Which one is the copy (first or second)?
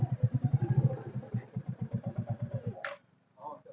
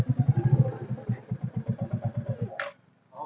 first